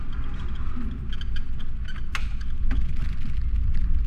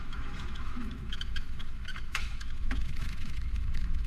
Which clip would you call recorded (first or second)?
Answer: first